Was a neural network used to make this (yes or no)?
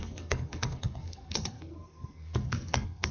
yes